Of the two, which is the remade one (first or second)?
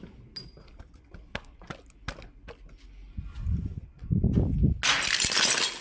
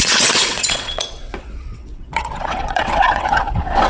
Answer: second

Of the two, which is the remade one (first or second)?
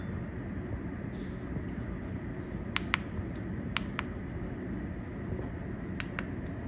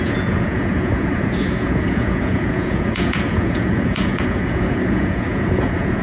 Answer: second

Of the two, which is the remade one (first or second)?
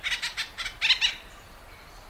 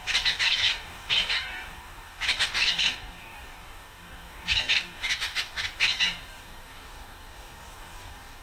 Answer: second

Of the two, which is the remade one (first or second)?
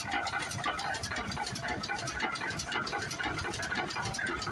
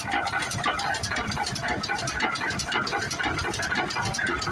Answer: first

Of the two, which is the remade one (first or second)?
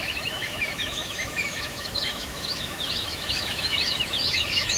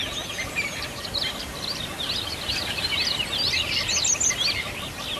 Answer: first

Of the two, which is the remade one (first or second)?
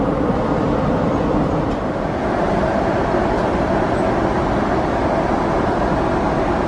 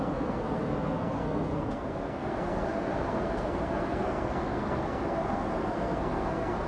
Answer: second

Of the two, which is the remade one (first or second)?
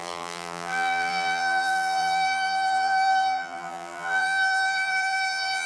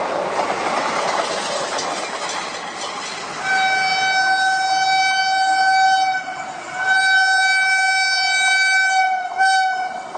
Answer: first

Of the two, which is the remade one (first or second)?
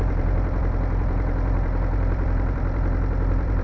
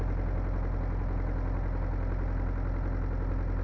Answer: first